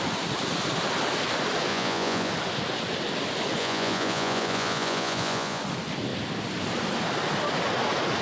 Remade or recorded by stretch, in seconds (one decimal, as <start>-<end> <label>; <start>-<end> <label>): 0.0-1.7 recorded; 1.7-2.3 remade; 2.3-3.6 recorded; 3.6-5.6 remade; 5.6-8.2 recorded